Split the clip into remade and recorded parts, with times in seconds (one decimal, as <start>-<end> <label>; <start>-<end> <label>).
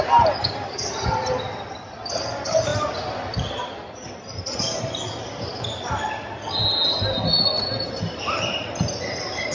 0.0-9.5 recorded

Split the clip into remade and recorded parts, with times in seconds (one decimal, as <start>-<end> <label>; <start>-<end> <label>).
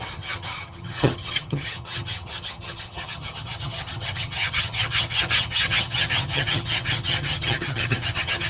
0.0-8.5 remade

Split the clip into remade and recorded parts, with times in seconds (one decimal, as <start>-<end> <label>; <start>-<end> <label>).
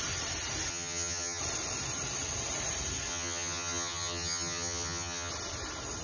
0.0-0.7 recorded; 0.7-1.4 remade; 1.4-3.1 recorded; 3.1-5.3 remade; 5.3-6.0 recorded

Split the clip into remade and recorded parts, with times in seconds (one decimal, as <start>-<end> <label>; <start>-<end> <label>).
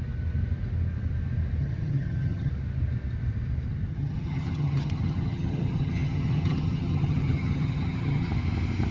0.0-1.6 recorded; 1.6-2.5 remade; 2.5-3.9 recorded; 3.9-8.3 remade; 8.3-8.9 recorded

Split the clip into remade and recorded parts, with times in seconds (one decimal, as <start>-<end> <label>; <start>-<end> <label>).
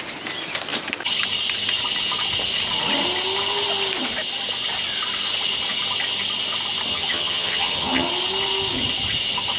0.0-6.9 recorded; 6.9-8.1 remade; 8.1-9.6 recorded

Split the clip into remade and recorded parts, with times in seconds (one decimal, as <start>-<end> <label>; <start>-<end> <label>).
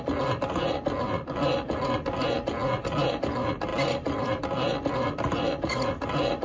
0.0-6.4 recorded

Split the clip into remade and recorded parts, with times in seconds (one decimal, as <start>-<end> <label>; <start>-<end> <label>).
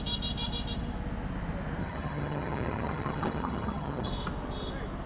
0.0-1.8 recorded; 1.8-4.1 remade; 4.1-5.1 recorded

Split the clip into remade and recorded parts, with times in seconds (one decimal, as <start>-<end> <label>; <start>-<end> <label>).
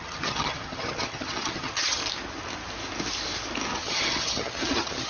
0.0-2.0 remade; 2.0-3.7 recorded; 3.7-5.1 remade